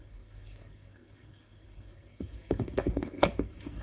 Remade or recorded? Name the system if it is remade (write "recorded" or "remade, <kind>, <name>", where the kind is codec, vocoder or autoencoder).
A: remade, codec, SNAC